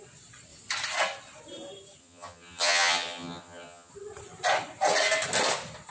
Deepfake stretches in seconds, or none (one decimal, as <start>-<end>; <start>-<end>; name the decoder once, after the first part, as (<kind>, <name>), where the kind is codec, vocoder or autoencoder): 2.0-3.9 (vocoder, HiFi-GAN)